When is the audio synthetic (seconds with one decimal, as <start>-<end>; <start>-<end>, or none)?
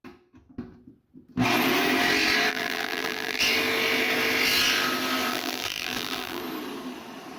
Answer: 2.5-3.4; 5.3-6.4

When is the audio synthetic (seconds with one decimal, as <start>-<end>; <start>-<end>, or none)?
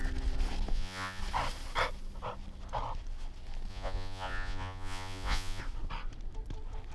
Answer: 0.7-1.2; 3.7-5.6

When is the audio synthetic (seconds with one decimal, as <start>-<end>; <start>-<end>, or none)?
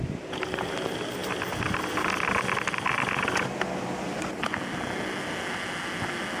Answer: none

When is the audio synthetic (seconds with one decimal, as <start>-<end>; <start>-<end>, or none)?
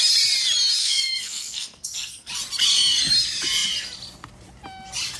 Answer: 0.8-2.3